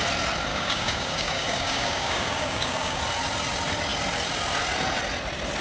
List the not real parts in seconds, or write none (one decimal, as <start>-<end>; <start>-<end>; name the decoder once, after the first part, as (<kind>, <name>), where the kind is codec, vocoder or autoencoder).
0.5-3.0 (codec, DAC)